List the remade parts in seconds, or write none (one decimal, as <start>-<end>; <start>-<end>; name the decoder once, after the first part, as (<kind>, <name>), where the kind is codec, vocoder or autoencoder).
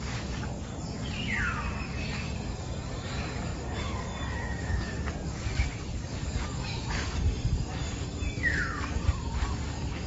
0.0-0.7 (codec, DAC); 1.4-10.1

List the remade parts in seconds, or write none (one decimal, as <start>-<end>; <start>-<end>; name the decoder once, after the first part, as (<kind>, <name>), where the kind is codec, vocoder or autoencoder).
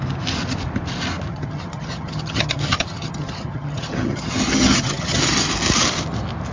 1.3-5.2 (vocoder, HiFi-GAN)